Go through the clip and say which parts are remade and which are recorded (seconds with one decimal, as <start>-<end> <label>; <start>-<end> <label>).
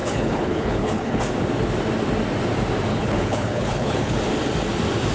0.0-1.2 remade; 1.2-2.9 recorded; 2.9-4.2 remade; 4.2-5.1 recorded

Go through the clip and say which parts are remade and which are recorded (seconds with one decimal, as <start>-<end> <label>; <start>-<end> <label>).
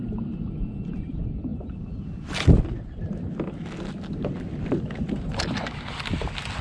0.0-6.6 recorded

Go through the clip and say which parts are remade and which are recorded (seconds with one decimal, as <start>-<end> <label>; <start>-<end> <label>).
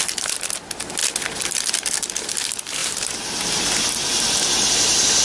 0.0-5.2 recorded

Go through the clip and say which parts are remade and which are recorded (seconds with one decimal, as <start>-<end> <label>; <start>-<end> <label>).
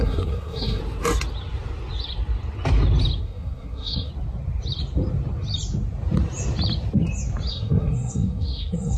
0.0-0.8 remade; 0.8-3.2 recorded; 3.2-4.1 remade; 4.1-7.5 recorded; 7.5-9.0 remade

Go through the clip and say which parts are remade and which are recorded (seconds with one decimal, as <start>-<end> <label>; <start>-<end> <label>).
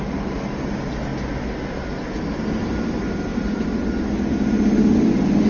0.0-5.5 recorded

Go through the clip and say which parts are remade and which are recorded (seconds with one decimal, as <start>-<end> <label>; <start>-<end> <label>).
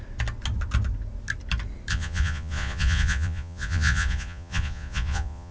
0.0-1.9 recorded; 1.9-5.5 remade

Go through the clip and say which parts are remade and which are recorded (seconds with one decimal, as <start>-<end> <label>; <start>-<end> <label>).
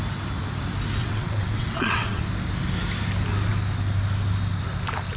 0.0-1.0 recorded; 1.0-2.2 remade; 2.2-5.2 recorded